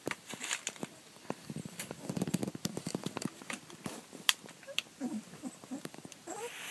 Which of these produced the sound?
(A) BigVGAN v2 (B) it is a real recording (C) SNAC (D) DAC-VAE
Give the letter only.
A